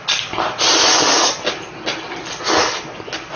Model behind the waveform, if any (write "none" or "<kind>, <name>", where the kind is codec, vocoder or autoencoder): none